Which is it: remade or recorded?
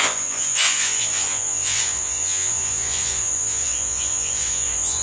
remade